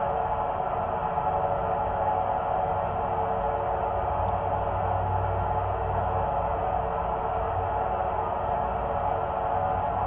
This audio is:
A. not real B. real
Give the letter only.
B